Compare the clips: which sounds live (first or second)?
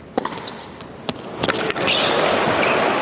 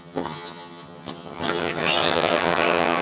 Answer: first